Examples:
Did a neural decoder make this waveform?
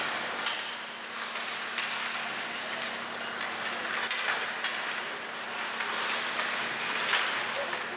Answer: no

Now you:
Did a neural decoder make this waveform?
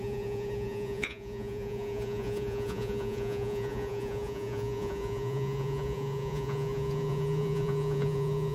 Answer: yes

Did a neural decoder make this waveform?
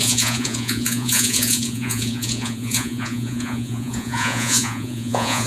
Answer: yes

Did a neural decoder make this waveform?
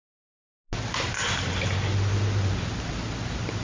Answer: no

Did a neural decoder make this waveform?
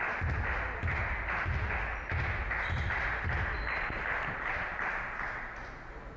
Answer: no